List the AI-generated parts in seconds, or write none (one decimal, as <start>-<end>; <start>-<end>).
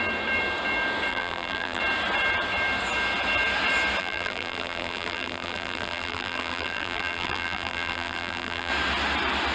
1.1-1.8; 4.0-8.7